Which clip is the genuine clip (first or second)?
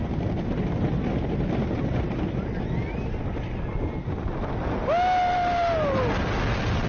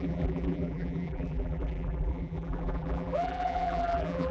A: first